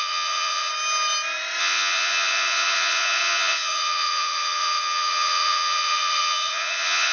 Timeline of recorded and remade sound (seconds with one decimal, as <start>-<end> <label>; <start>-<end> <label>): 0.0-0.7 remade; 0.7-1.6 recorded; 1.6-7.1 remade